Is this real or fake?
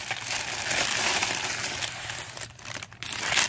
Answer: fake